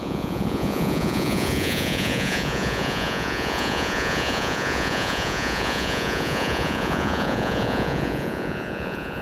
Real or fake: fake